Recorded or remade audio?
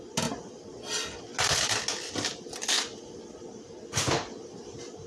recorded